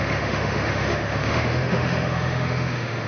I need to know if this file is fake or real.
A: fake